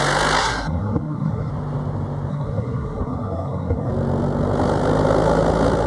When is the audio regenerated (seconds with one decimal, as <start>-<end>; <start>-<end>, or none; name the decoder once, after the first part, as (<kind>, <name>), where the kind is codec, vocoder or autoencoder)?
0.4-1.5 (codec, SNAC); 2.3-3.9